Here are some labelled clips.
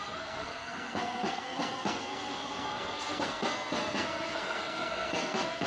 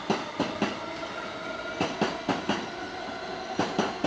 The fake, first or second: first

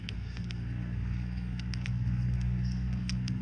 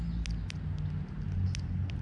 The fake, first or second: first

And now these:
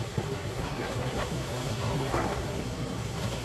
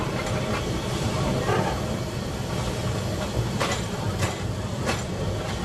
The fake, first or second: first